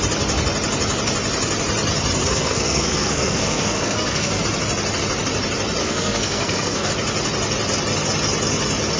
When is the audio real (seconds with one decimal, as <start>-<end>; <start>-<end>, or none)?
0.0-2.2; 4.4-5.8; 6.9-9.0